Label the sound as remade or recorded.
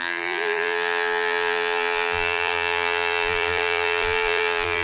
remade